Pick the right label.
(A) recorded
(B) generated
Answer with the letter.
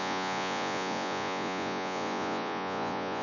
B